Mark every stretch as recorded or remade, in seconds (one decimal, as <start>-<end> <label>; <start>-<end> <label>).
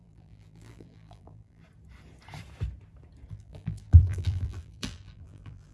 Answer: 0.0-1.6 remade; 1.6-3.3 recorded; 3.3-5.7 remade